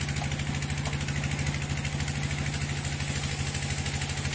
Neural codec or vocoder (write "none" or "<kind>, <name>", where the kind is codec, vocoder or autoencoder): none